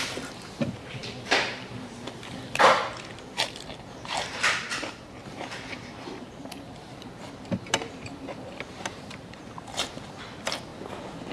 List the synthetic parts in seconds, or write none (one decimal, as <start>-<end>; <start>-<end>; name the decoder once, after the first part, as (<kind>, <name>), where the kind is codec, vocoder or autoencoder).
0.0-10.7 (vocoder, BigVGAN v2)